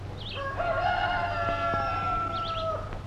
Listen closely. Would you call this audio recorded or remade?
recorded